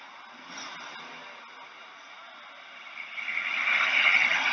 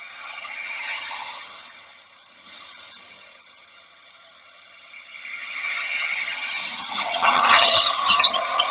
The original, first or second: first